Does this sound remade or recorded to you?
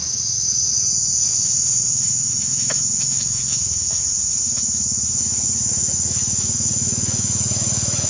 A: remade